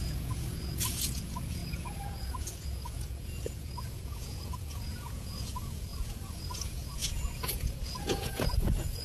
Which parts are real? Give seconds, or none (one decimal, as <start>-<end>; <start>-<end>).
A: none